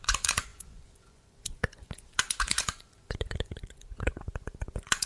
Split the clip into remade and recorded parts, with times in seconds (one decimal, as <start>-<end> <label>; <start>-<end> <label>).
0.0-5.1 remade

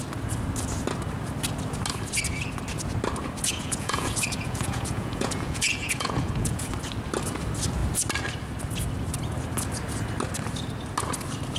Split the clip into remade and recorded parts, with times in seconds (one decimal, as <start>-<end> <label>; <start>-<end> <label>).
0.0-3.5 recorded; 3.5-6.7 remade; 6.7-11.6 recorded

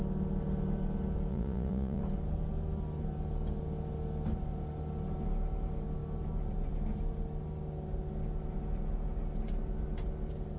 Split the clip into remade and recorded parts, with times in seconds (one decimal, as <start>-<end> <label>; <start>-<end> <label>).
0.0-1.3 recorded; 1.3-2.0 remade; 2.0-10.6 recorded